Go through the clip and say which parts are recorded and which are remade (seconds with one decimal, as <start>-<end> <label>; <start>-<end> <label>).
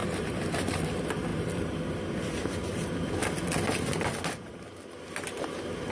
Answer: 0.0-0.8 remade; 0.8-1.3 recorded; 1.3-2.0 remade; 2.0-5.9 recorded